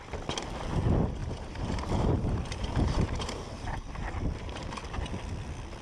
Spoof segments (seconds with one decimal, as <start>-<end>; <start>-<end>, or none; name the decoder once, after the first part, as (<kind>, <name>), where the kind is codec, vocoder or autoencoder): 1.2-4.7 (vocoder, BigVGAN v2)